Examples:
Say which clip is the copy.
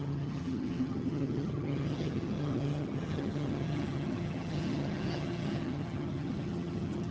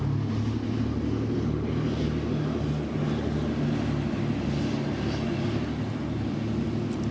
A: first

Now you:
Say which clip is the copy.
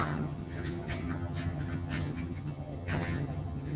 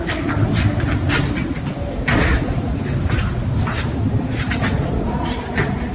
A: first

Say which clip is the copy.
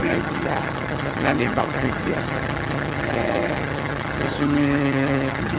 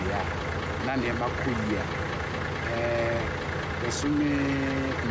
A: first